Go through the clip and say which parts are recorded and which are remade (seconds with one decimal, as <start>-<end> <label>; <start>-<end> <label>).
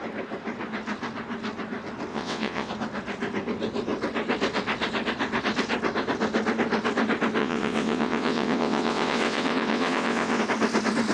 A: 0.0-2.1 recorded; 2.1-2.7 remade; 2.7-7.4 recorded; 7.4-10.4 remade; 10.4-11.1 recorded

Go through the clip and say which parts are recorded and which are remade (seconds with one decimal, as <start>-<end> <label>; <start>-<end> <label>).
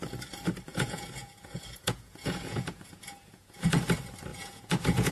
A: 0.0-0.7 recorded; 0.7-3.8 remade; 3.8-4.3 recorded; 4.3-5.1 remade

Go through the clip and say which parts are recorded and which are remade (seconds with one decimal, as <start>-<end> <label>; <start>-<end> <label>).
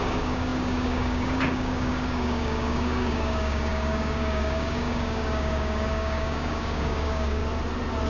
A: 0.0-7.4 remade; 7.4-8.1 recorded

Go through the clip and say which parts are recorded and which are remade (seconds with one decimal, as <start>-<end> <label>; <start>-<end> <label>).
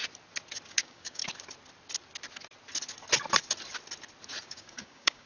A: 0.0-0.7 recorded; 0.7-1.2 remade; 1.2-4.4 recorded; 4.4-5.3 remade